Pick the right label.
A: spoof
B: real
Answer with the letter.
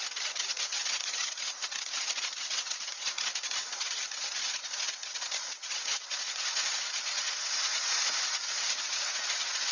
A